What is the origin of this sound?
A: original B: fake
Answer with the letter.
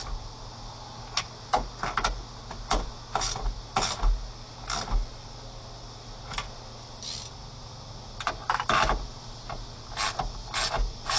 A